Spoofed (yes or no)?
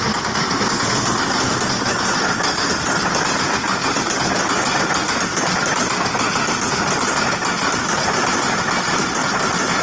no